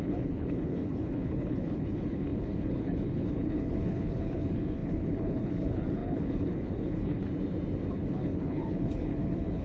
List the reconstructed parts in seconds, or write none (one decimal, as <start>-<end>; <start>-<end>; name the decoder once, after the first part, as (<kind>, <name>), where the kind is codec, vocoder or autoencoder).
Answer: 0.0-7.2 (codec, HILCodec); 7.9-9.6